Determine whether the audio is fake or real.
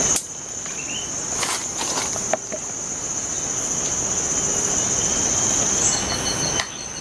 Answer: real